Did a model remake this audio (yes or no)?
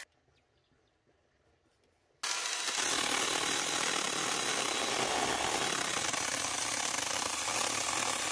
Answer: no